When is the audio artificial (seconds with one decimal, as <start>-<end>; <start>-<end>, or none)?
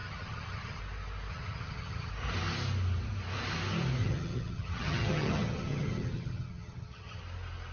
0.0-0.8; 1.3-2.1; 4.0-7.2